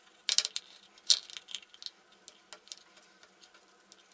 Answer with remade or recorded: recorded